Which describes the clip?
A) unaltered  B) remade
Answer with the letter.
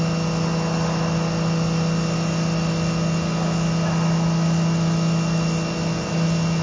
A